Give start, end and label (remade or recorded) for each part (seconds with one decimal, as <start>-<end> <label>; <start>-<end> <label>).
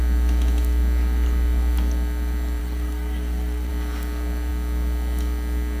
0.0-2.6 recorded; 2.6-3.7 remade; 3.7-5.8 recorded